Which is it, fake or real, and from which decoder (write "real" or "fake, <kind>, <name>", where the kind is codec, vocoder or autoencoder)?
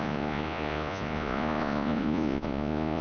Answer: fake, vocoder, Vocos